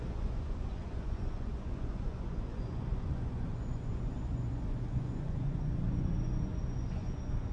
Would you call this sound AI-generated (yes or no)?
yes